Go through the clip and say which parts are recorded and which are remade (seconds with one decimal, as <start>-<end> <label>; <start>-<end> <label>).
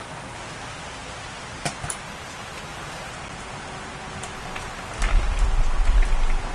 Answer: 0.0-1.0 remade; 1.0-1.6 recorded; 1.6-2.7 remade; 2.7-5.1 recorded; 5.1-6.5 remade